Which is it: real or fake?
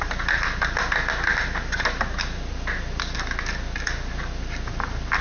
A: real